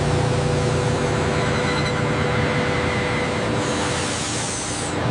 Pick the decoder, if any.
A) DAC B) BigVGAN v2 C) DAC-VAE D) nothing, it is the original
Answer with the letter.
D